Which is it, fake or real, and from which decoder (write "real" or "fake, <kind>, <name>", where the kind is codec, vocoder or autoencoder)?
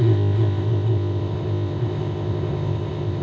fake, codec, ZipCodec